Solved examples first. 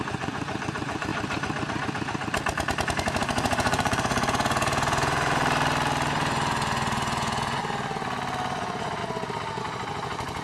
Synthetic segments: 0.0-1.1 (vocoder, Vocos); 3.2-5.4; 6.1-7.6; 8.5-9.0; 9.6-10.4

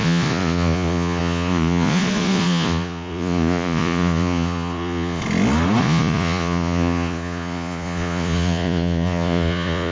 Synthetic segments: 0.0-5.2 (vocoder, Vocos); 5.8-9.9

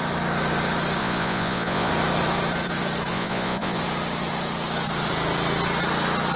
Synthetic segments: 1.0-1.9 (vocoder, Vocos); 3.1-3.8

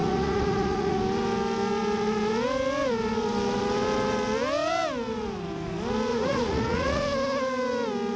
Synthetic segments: 0.0-1.0 (vocoder, Vocos); 6.1-7.0

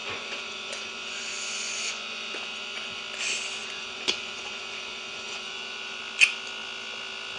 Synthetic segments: 0.0-3.0 (vocoder, Vocos); 3.6-6.0

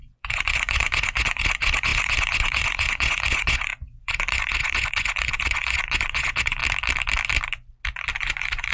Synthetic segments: 0.0-6.6 (vocoder, Vocos); 8.1-8.7